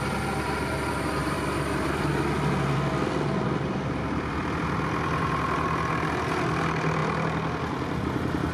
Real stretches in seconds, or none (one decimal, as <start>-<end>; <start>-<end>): 0.0-1.2; 5.2-8.5